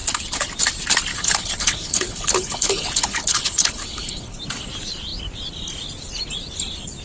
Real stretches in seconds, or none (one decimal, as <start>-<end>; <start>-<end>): 0.0-1.1; 4.4-7.0